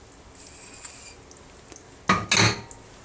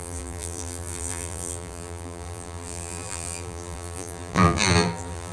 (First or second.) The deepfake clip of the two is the second